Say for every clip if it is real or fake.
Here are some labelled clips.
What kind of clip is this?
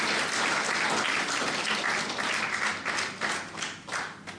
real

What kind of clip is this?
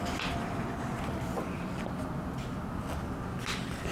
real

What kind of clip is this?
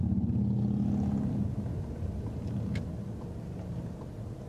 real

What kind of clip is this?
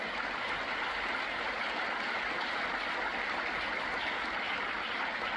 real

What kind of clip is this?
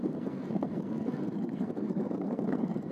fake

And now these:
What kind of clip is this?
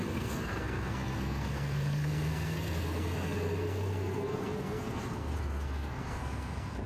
fake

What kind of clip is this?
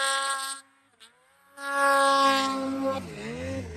real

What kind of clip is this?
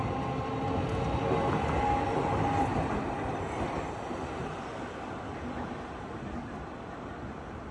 real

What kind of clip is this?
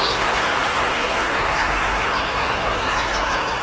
fake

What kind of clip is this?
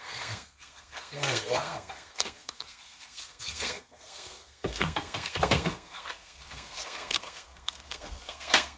fake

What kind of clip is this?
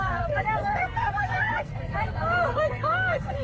fake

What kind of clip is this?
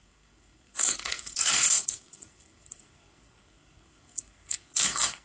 fake